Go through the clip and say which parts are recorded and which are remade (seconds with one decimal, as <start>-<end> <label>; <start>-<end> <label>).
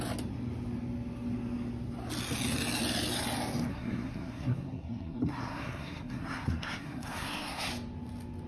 0.0-3.7 recorded; 3.7-7.7 remade; 7.7-8.5 recorded